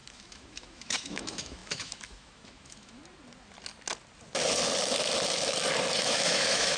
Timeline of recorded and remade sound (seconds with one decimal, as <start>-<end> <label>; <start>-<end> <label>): 0.0-3.0 remade; 3.0-6.0 recorded; 6.0-6.8 remade